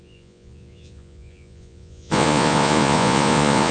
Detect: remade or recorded remade